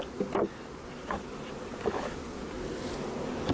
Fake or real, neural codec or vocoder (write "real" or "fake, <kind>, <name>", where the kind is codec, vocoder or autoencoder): real